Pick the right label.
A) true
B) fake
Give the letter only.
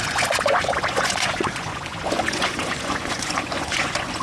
B